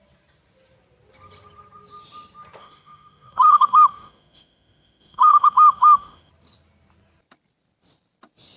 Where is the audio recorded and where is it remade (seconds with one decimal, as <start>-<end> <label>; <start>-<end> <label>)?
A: 0.0-2.6 recorded; 2.6-6.3 remade; 6.3-8.6 recorded